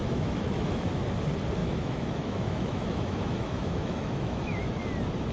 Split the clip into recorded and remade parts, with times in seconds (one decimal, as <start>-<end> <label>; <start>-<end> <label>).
0.0-1.1 remade; 1.1-1.6 recorded; 1.6-4.8 remade; 4.8-5.3 recorded